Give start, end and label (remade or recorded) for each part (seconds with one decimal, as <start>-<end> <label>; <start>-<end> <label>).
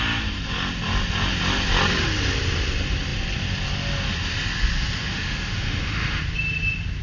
0.0-5.0 recorded; 5.0-6.2 remade; 6.2-7.0 recorded